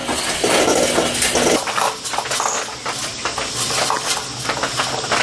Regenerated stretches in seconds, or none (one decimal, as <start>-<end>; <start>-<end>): none